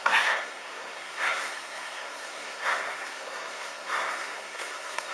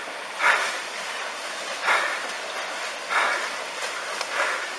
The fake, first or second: first